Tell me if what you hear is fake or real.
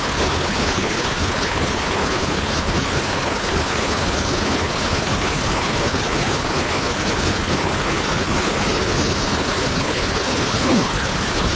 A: fake